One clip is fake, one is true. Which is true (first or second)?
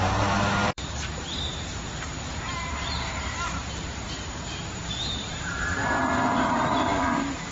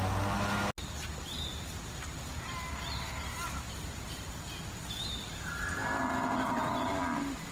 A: second